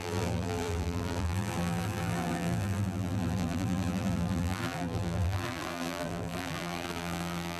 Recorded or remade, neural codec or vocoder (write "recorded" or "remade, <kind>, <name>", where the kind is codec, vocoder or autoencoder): remade, vocoder, BigVGAN v2